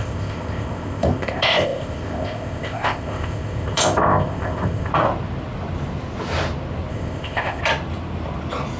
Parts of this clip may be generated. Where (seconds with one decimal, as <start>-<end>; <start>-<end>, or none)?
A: 0.0-4.9; 6.9-7.6